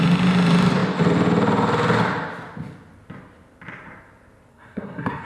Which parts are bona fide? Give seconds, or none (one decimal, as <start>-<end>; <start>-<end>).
0.0-4.5